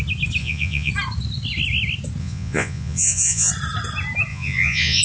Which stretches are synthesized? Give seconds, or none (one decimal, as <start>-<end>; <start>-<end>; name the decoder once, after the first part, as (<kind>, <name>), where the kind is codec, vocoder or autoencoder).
0.4-0.9 (vocoder, Vocos); 2.2-3.5; 4.3-5.0